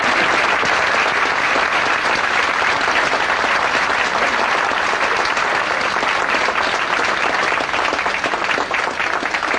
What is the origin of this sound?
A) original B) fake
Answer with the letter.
A